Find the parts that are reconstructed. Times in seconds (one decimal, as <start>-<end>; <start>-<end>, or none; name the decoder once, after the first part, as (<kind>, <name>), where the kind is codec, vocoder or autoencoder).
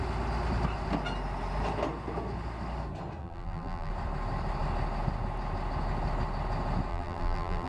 3.2-3.9 (vocoder, BigVGAN v2); 6.9-7.7